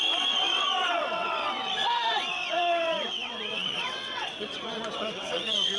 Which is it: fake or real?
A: fake